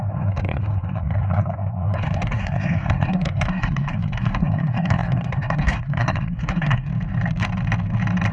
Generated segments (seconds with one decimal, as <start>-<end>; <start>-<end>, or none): 0.0-6.9